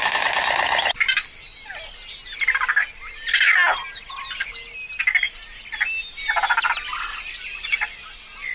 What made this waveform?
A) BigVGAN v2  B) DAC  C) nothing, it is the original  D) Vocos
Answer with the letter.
C